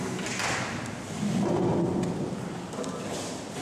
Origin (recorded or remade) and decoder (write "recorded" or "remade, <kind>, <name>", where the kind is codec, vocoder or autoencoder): recorded